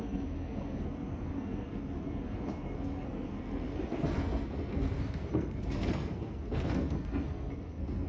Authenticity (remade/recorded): remade